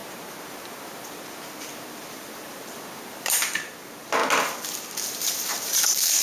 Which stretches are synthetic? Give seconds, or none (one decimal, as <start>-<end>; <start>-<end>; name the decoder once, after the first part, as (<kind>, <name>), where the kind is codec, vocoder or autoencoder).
0.0-4.2 (vocoder, BigVGAN v2); 5.0-6.2